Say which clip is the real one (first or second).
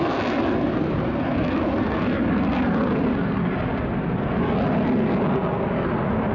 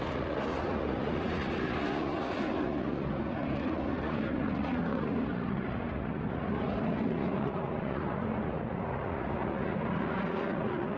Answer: first